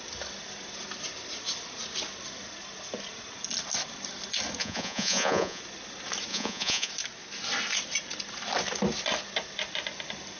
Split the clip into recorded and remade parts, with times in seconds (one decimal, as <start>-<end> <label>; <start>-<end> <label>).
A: 0.0-4.6 recorded; 4.6-5.6 remade; 5.6-6.3 recorded; 6.3-6.9 remade; 6.9-10.4 recorded